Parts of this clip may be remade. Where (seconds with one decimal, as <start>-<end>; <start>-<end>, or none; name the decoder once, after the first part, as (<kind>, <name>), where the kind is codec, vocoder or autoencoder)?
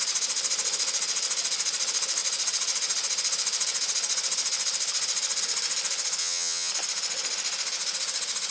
6.2-6.7 (vocoder, HiFi-GAN)